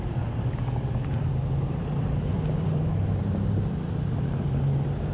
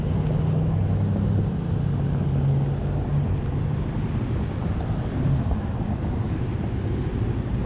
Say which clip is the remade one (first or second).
first